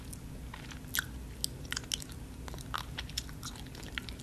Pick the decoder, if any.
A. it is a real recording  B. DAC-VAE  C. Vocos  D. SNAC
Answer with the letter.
A